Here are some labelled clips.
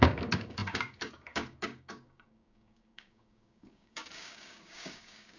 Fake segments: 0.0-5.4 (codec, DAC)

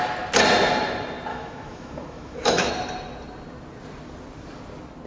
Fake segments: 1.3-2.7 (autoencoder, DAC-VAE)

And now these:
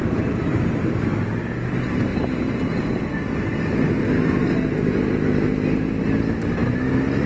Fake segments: 0.0-1.1 (vocoder, BigVGAN v2)